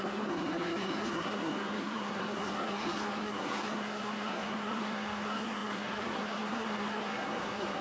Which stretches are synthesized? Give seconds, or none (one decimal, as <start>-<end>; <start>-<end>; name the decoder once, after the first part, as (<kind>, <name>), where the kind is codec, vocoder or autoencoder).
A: 0.0-7.8 (codec, SNAC)